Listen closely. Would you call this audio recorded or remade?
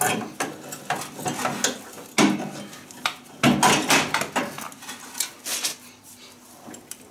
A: recorded